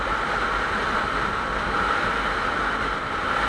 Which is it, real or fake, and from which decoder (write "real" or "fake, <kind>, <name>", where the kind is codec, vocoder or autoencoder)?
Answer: real